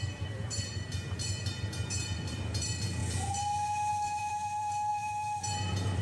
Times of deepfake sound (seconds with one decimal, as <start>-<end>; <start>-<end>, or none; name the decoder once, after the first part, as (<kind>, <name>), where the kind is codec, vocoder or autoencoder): 0.0-3.0 (vocoder, BigVGAN v2); 3.9-6.0